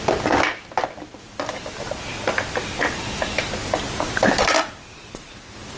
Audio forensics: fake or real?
real